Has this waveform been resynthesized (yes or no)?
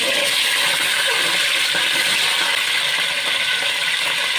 no